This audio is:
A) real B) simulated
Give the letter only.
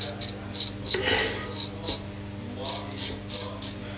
A